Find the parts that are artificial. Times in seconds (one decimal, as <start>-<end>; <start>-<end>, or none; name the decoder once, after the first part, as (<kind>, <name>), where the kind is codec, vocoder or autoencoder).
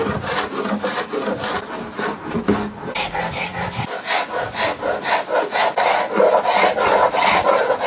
none